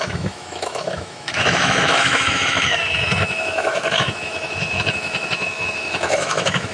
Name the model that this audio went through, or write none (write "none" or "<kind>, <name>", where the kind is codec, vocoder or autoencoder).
autoencoder, DAC-VAE